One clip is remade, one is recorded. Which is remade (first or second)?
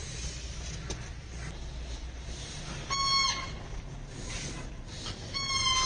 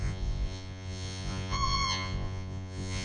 second